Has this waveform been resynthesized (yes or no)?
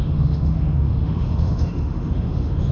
yes